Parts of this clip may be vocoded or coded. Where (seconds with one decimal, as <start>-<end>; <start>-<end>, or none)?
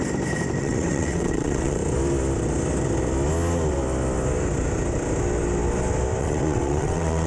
0.6-1.8; 6.2-7.3